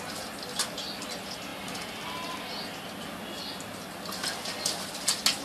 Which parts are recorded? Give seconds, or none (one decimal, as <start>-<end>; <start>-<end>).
0.0-5.4